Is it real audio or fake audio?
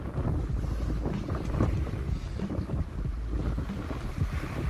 real